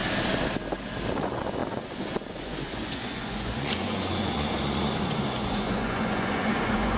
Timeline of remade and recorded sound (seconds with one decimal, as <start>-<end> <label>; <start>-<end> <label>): 0.0-1.1 recorded; 1.1-7.0 remade